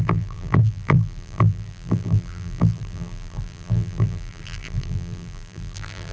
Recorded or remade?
remade